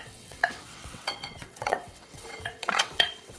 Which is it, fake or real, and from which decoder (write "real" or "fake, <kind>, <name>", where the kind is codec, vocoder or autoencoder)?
fake, vocoder, WaveNeXt